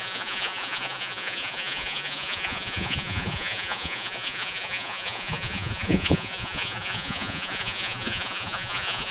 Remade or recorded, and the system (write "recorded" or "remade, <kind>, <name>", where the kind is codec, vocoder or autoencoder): remade, vocoder, Vocos